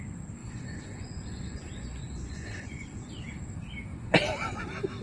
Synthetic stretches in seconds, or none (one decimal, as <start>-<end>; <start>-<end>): 0.4-3.4; 3.9-4.6